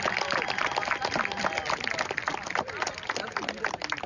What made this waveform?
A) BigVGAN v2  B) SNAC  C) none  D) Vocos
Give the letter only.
C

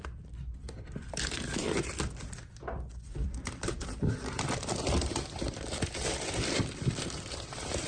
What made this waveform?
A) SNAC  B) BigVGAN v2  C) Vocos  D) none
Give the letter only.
B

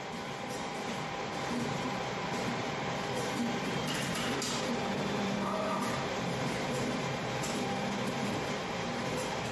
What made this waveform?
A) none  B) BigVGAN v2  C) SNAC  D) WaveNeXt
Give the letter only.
B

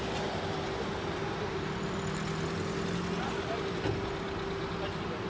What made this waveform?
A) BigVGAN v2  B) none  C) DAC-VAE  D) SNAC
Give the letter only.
B